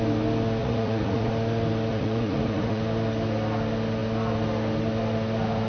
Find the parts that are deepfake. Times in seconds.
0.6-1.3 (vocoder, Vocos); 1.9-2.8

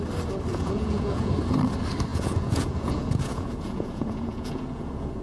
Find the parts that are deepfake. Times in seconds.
0.5-1.3 (vocoder, Vocos); 2.1-5.2

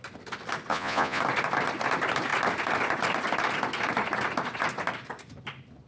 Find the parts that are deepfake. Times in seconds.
0.7-1.2 (vocoder, Vocos)

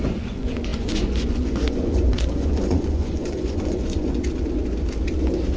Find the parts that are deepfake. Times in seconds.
0.0-4.2 (vocoder, Vocos)

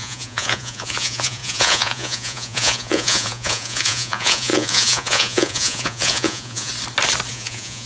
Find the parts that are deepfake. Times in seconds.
0.0-6.7 (vocoder, Vocos); 7.3-7.9

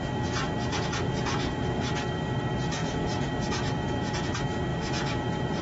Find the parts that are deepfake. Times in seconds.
0.7-1.8 (vocoder, Vocos); 2.8-3.3

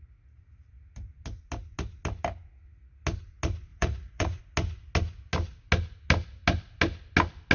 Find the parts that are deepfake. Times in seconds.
3.7-4.4 (vocoder, Vocos)